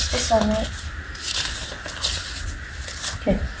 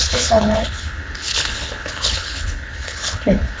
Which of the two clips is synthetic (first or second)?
second